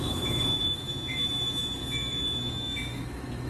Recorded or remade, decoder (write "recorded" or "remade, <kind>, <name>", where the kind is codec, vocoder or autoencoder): remade, autoencoder, DAC-VAE